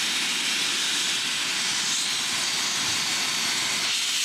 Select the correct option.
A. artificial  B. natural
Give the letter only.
B